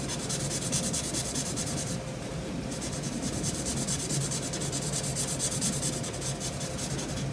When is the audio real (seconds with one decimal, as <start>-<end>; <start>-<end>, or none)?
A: 0.0-1.2; 3.7-7.3